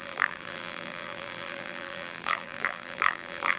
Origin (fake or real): fake